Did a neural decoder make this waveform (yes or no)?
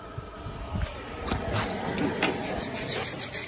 no